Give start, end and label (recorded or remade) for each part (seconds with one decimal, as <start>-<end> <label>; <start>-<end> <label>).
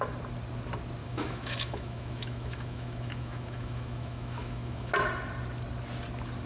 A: 0.0-1.0 recorded; 1.0-4.9 remade; 4.9-6.5 recorded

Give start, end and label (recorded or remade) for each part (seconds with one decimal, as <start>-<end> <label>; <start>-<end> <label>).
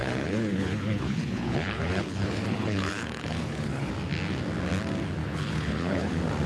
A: 0.0-3.9 remade; 3.9-5.2 recorded; 5.2-6.1 remade; 6.1-6.5 recorded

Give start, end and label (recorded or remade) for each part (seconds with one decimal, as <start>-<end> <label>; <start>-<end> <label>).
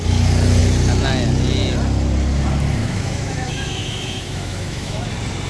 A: 0.0-2.8 recorded; 2.8-5.1 remade; 5.1-5.5 recorded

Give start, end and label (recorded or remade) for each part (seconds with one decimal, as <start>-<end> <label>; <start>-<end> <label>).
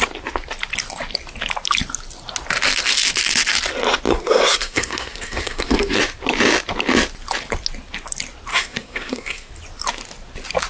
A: 0.0-4.1 recorded; 4.1-6.0 remade; 6.0-8.5 recorded; 8.5-9.5 remade; 9.5-10.7 recorded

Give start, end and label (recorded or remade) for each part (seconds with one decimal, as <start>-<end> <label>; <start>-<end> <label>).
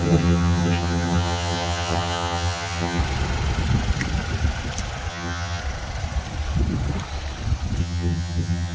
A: 0.0-3.0 remade; 3.0-5.1 recorded; 5.1-5.6 remade; 5.6-7.8 recorded; 7.8-8.7 remade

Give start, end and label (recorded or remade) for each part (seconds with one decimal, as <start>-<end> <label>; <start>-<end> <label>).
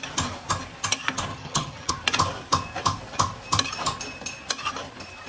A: 0.0-1.3 recorded; 1.3-1.9 remade; 1.9-5.3 recorded